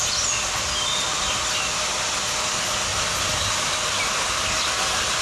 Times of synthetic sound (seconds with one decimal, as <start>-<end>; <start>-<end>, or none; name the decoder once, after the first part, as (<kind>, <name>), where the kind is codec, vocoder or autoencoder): none